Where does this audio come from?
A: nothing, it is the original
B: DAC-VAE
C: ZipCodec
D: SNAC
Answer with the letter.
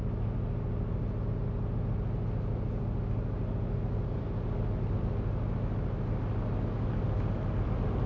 A